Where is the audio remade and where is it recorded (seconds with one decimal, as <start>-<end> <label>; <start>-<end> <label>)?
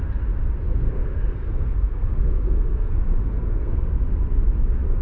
0.0-0.9 recorded; 0.9-3.9 remade; 3.9-5.0 recorded